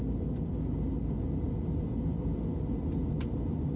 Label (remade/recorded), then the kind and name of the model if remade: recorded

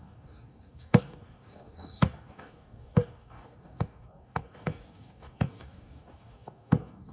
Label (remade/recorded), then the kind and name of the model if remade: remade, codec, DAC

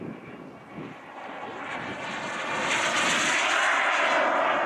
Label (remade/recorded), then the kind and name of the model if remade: recorded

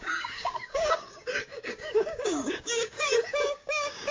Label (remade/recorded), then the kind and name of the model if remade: remade, codec, DAC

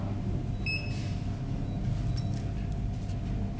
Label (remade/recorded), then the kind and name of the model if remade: recorded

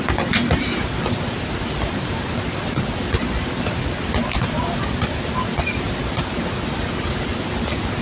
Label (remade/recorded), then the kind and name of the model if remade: recorded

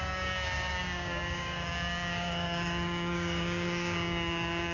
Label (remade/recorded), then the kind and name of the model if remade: remade, codec, DAC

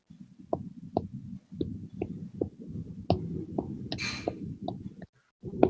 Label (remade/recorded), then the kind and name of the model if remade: recorded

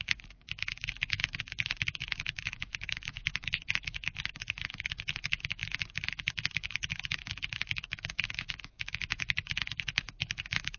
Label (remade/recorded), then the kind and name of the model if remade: remade, codec, DAC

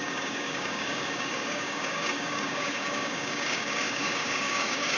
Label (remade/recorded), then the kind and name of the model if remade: remade, codec, DAC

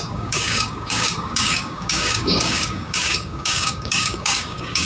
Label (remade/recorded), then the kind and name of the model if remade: remade, codec, DAC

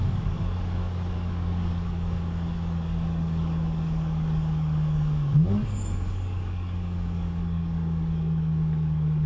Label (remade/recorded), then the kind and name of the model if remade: remade, codec, DAC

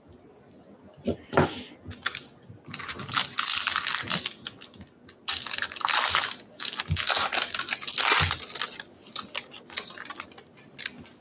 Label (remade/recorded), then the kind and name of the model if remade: recorded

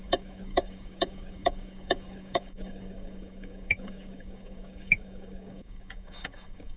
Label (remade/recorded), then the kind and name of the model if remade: remade, codec, DAC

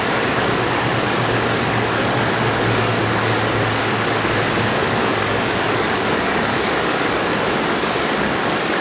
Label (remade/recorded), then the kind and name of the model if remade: remade, codec, DAC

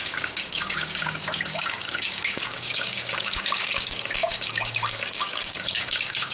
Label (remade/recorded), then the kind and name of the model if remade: remade, codec, DAC